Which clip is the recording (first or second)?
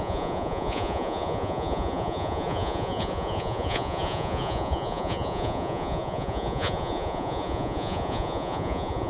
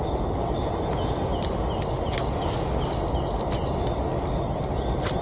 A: second